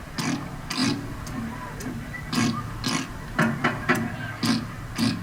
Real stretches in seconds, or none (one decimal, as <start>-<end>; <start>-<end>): 0.0-5.2